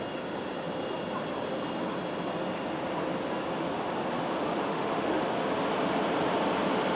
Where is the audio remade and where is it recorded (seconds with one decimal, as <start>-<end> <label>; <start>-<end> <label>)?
0.0-4.7 recorded; 4.7-5.2 remade; 5.2-7.0 recorded